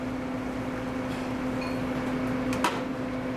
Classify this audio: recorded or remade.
recorded